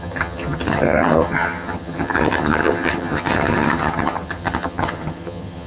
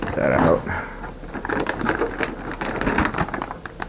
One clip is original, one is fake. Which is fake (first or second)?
first